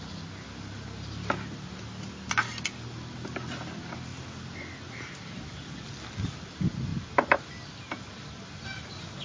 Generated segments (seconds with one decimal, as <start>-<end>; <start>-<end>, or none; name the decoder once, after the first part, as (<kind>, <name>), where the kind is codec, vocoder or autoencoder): none